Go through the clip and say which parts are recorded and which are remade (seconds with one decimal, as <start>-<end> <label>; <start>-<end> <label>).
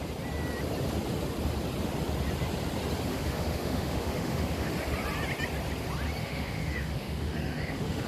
0.0-3.1 recorded; 3.1-4.7 remade; 4.7-6.2 recorded; 6.2-8.1 remade